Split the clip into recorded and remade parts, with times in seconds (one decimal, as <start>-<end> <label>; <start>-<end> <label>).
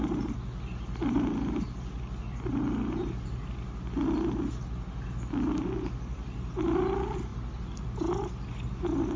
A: 0.0-9.2 recorded